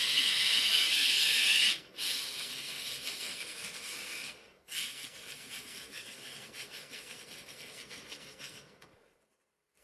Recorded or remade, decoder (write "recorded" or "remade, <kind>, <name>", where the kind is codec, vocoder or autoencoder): remade, codec, SNAC